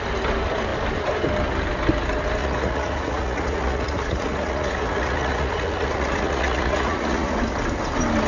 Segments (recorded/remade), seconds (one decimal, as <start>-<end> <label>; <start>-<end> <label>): 0.0-2.4 recorded; 2.4-7.4 remade; 7.4-8.3 recorded